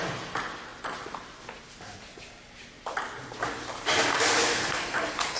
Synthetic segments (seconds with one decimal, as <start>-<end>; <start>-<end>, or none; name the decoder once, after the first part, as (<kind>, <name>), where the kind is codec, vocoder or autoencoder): 4.4-5.4 (codec, SNAC)